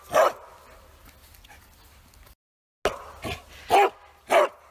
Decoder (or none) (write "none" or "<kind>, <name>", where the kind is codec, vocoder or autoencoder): none